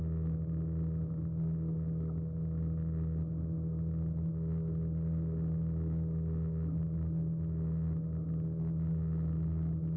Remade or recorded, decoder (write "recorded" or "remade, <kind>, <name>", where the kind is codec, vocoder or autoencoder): recorded